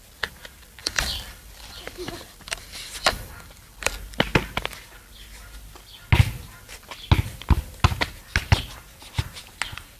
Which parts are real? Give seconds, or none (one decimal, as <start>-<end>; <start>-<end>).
0.0-0.8; 3.9-10.0